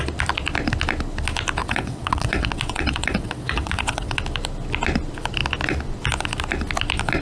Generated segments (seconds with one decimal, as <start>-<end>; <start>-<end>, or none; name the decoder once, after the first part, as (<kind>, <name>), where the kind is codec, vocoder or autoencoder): 1.6-4.2 (vocoder, WaveNeXt)